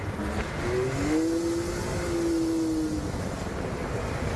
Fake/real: real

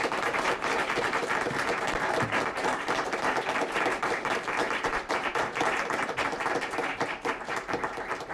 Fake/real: fake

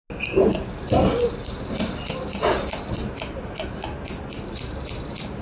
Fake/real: real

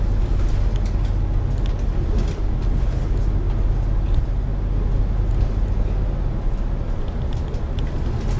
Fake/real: real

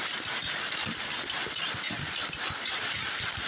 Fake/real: real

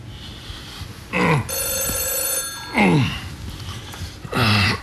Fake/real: real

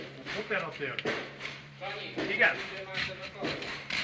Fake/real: fake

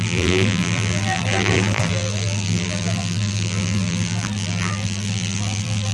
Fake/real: fake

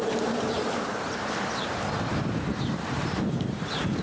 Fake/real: fake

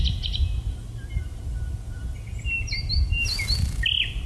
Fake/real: real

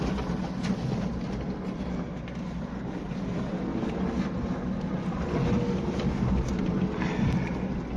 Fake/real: real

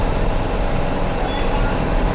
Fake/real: real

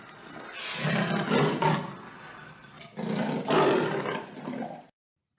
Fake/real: real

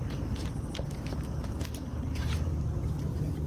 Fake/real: fake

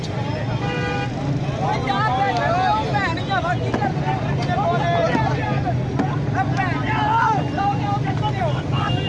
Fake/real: real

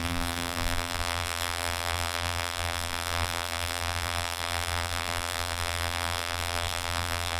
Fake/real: fake